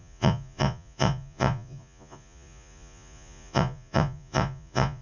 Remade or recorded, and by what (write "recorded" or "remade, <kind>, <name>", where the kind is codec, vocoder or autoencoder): remade, vocoder, Vocos